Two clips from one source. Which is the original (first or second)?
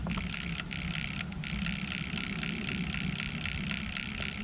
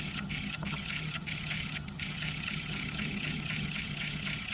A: first